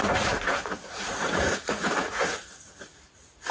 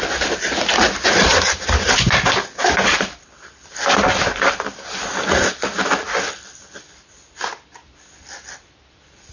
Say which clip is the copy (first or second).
first